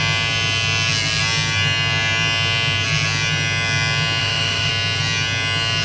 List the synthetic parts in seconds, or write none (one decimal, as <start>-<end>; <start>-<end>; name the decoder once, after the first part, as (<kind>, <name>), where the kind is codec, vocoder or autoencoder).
4.2-4.7 (autoencoder, DAC-VAE)